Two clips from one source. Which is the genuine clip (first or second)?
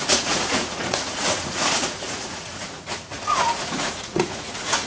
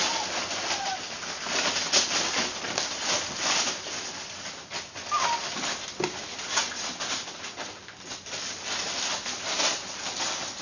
second